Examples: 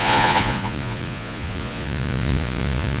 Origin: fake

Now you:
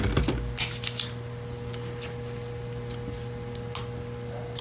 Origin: real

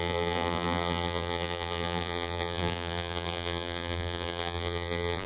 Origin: fake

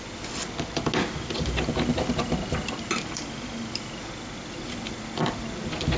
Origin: real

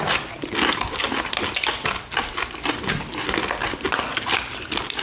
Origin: real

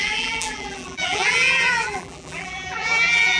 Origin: fake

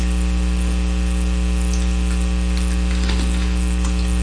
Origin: real